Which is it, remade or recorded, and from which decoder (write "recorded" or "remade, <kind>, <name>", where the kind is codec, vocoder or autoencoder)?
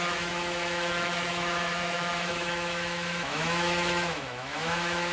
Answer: remade, autoencoder, DAC-VAE